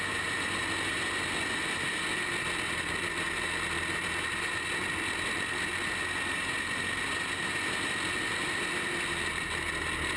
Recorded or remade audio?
recorded